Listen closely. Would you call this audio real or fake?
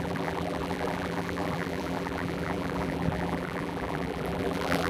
fake